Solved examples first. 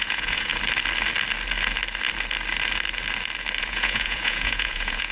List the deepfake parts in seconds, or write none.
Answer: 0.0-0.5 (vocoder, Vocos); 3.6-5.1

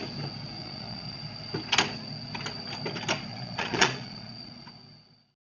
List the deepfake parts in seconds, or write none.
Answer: 0.6-1.2 (vocoder, Vocos); 3.3-4.7

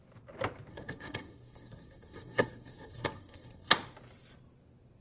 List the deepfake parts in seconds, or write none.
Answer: 0.7-3.7 (codec, SNAC)

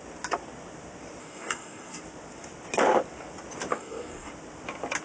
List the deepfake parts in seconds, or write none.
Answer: 1.2-2.0 (codec, DAC); 3.7-4.3

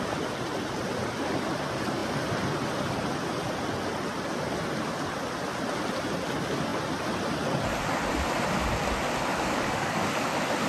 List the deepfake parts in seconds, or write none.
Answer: 9.3-10.0 (codec, DAC)

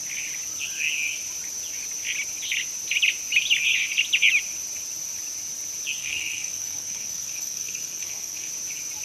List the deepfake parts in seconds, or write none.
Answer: 6.0-8.5 (codec, SNAC)

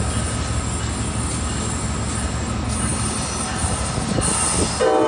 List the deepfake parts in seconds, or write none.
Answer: none

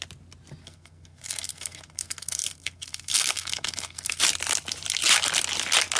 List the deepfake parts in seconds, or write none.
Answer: 0.6-4.2 (codec, SNAC)